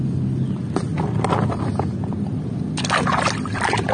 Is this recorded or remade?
recorded